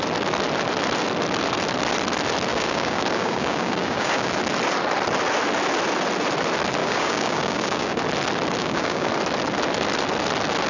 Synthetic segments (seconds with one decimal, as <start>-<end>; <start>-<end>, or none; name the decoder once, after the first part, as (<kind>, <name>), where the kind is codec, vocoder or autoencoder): 2.5-4.3 (codec, DAC); 6.8-8.0; 8.6-9.1